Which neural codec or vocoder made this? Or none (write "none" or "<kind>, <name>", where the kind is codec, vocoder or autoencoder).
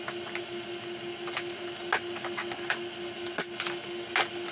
none